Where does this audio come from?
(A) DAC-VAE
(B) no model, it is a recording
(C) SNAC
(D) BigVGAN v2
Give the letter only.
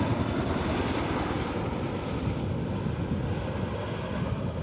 B